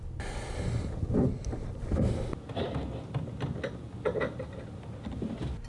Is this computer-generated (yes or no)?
no